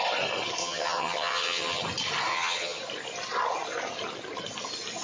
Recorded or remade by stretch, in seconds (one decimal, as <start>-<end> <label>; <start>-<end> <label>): 0.0-0.6 recorded; 0.6-1.8 remade; 1.8-2.3 recorded; 2.3-2.8 remade; 2.8-5.0 recorded